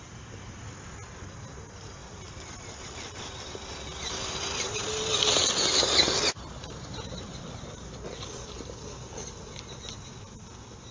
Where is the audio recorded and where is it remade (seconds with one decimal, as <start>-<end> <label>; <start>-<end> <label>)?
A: 0.0-10.9 recorded